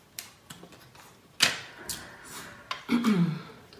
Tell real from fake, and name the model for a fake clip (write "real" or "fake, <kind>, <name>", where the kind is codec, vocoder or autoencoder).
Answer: real